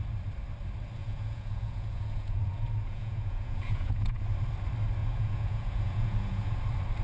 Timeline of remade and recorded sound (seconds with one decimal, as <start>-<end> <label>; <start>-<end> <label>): 0.0-1.0 recorded; 1.0-4.2 remade; 4.2-5.0 recorded; 5.0-6.5 remade; 6.5-7.0 recorded